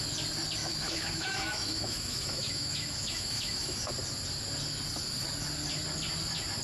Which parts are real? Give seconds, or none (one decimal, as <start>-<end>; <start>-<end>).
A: 0.0-0.6; 3.9-6.6